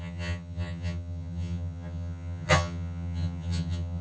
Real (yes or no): no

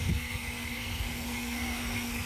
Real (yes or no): no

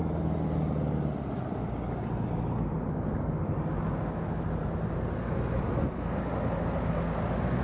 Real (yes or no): yes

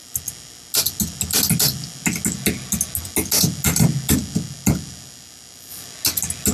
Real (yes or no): yes